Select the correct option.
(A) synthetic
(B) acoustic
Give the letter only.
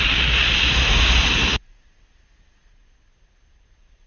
B